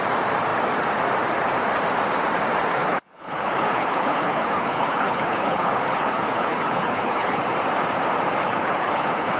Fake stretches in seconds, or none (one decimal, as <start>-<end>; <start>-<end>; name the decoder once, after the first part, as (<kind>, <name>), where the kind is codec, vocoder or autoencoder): 2.7-7.4 (codec, HILCodec); 8.4-9.4